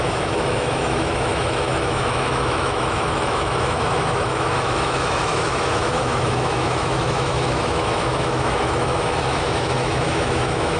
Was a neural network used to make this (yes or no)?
yes